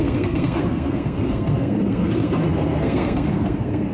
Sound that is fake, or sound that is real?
fake